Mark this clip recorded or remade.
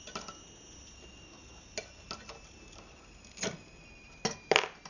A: recorded